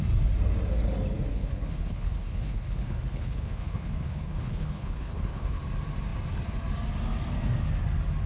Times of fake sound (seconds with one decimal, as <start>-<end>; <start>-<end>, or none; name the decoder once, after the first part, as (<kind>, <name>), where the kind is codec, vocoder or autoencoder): 1.3-5.6 (codec, HILCodec)